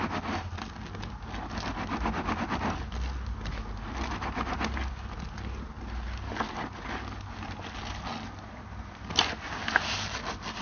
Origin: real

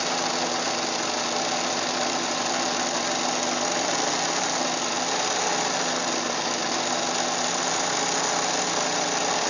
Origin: real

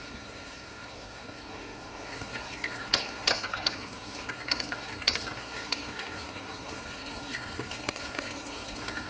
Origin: fake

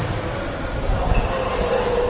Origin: real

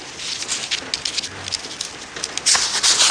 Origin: real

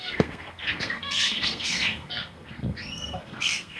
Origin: fake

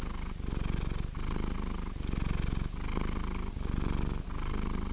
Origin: real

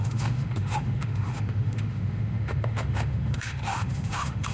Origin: fake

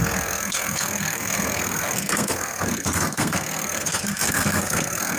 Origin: fake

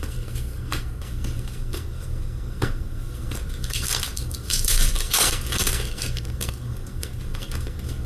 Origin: fake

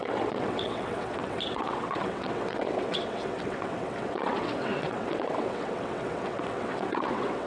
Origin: fake